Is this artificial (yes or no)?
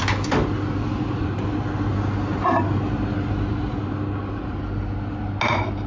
no